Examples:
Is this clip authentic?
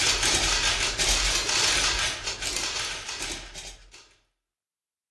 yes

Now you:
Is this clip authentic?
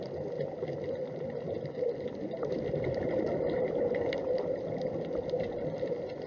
yes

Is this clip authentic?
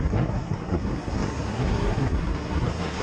no